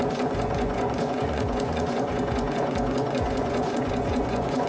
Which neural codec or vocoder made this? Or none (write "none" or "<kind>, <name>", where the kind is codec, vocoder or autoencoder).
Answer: vocoder, Vocos